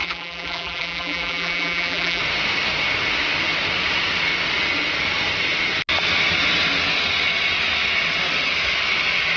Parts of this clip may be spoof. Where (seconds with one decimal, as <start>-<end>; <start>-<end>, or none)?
0.0-2.2